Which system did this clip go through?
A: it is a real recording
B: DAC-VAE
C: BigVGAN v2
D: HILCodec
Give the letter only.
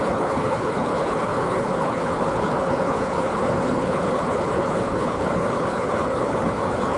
D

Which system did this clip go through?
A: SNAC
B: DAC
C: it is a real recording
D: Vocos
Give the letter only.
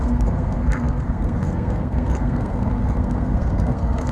A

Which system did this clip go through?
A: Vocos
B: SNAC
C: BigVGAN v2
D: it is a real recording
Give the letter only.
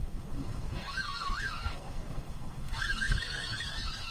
B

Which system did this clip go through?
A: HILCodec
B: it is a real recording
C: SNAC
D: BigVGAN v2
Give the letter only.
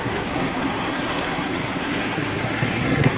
C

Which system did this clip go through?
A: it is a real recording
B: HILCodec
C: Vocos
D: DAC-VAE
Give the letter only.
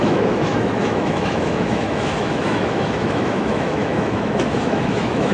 D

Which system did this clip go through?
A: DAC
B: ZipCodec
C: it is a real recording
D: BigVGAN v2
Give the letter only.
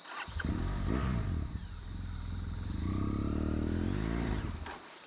D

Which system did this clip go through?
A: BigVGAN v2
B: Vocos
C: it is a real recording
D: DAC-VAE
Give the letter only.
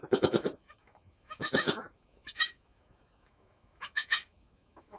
D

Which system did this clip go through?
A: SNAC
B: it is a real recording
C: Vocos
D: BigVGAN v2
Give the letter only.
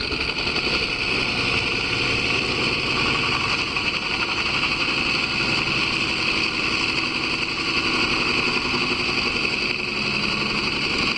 B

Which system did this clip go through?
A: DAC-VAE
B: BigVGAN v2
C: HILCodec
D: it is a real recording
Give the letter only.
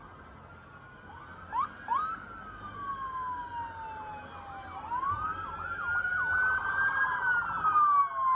D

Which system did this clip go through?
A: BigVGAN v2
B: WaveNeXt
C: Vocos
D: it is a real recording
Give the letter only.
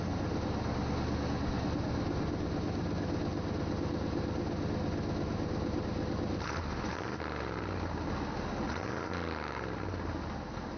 D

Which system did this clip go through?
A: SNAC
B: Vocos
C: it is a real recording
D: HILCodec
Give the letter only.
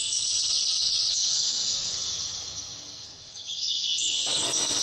A